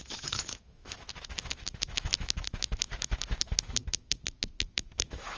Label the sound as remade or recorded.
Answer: remade